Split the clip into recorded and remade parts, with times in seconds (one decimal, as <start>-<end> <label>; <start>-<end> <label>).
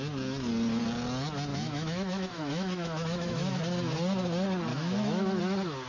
0.0-1.5 recorded; 1.5-3.6 remade; 3.6-4.7 recorded; 4.7-5.4 remade; 5.4-5.9 recorded